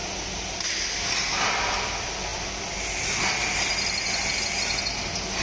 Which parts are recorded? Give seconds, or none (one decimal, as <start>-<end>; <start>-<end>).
0.0-5.4